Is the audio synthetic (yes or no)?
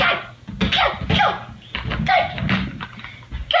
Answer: no